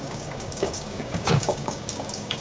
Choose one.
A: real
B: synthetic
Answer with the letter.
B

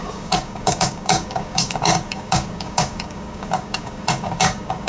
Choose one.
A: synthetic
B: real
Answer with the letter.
A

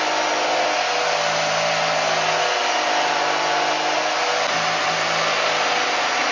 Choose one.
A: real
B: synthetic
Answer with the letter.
A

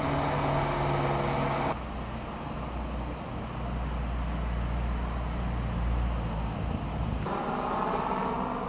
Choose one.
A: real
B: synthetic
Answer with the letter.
A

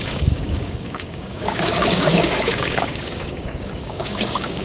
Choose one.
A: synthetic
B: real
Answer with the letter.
A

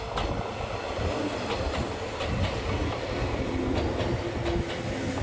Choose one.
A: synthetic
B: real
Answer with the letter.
B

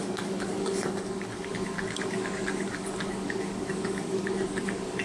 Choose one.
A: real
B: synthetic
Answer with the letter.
B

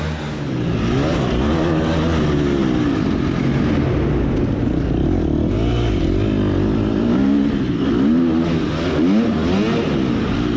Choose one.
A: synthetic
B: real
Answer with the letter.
B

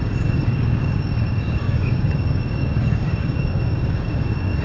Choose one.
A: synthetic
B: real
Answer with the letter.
A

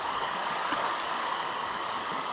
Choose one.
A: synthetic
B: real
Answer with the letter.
A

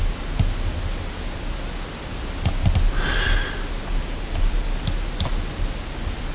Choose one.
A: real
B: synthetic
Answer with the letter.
A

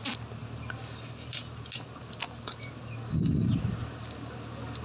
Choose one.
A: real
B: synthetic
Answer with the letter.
A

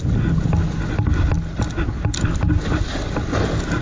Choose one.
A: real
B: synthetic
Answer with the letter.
A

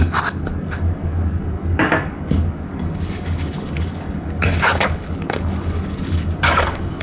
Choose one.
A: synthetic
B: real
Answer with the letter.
A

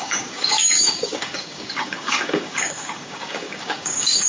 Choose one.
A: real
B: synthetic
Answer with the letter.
B